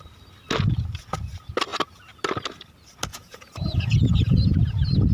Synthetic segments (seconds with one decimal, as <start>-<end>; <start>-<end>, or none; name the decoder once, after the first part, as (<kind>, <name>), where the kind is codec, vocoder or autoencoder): 3.1-4.4 (vocoder, Vocos)